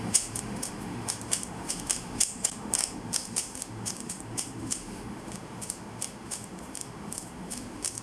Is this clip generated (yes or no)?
yes